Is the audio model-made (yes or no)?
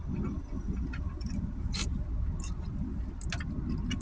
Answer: no